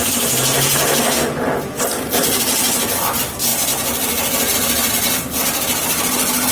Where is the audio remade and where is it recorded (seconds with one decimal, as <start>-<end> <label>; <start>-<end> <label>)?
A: 0.0-6.5 recorded